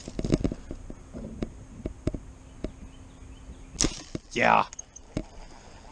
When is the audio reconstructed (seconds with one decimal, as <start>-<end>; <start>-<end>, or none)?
none